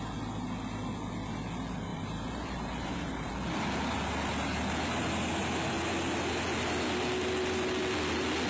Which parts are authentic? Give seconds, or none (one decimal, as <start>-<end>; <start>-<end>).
0.0-1.9; 3.3-8.5